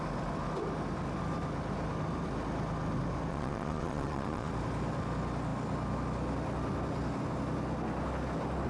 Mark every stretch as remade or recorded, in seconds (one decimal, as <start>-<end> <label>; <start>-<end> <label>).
0.0-3.3 recorded; 3.3-4.5 remade; 4.5-8.7 recorded